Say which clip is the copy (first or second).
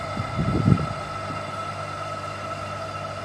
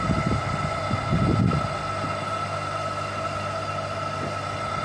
first